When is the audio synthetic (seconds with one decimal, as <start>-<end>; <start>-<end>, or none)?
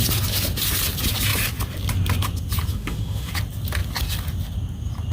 2.7-3.3